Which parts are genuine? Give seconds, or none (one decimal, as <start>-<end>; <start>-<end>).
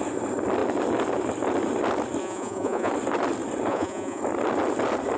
0.0-2.2; 2.9-3.7; 4.2-5.2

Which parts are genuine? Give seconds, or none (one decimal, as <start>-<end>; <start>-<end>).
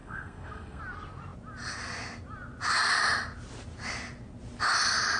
0.8-5.2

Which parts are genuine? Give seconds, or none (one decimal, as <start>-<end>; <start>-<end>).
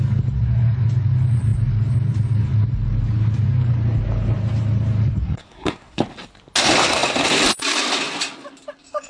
0.0-5.2; 6.0-9.1